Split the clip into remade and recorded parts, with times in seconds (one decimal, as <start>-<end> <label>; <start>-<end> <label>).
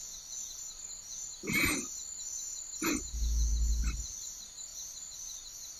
0.0-4.7 recorded; 4.7-5.8 remade